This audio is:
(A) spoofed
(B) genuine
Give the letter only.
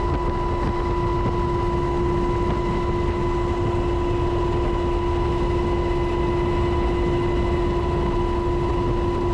B